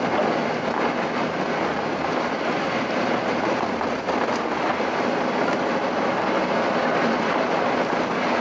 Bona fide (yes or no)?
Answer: yes